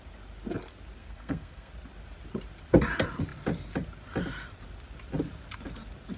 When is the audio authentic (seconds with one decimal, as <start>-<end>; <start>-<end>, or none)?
0.0-1.0; 1.7-6.2